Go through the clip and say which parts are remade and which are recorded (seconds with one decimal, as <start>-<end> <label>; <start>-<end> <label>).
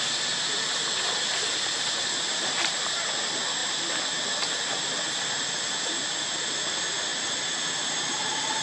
0.0-8.6 recorded